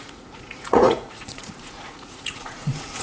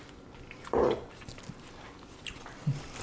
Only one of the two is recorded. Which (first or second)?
second